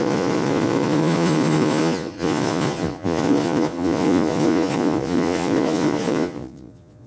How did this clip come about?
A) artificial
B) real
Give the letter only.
A